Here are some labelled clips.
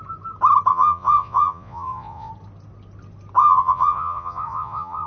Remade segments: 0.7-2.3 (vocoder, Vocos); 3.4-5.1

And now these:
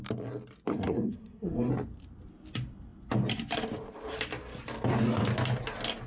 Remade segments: 0.7-1.7 (codec, SNAC)

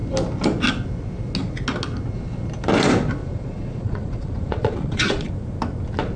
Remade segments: 3.2-5.3 (vocoder, Vocos)

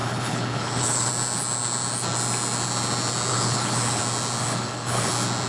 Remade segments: 0.0-1.1 (codec, HILCodec); 3.3-4.0; 4.4-5.1